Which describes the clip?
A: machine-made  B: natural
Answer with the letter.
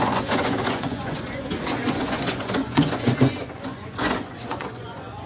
A